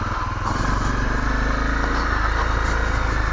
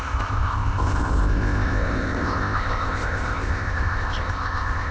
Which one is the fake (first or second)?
second